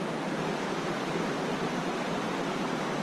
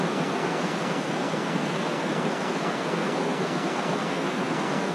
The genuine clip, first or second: first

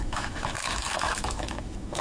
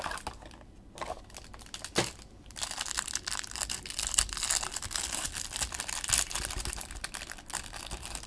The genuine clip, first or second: second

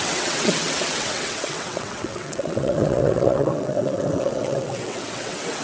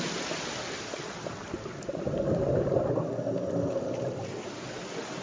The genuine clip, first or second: second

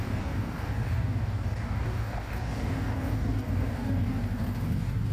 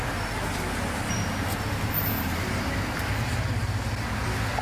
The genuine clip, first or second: second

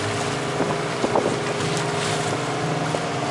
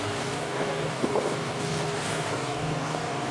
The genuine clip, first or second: first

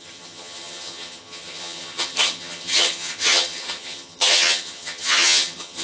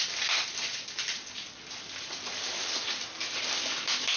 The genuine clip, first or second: second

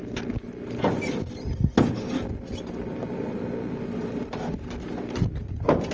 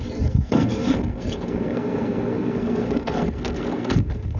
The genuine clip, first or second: first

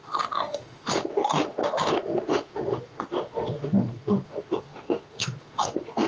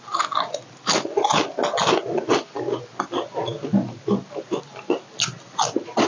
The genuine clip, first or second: second